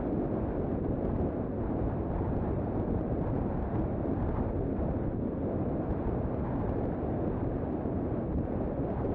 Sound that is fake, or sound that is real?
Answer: real